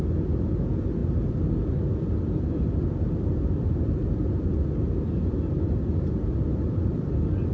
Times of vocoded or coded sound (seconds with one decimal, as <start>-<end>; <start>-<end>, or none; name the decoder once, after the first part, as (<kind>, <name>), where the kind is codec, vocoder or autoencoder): none